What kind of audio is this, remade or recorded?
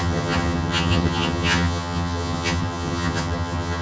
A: remade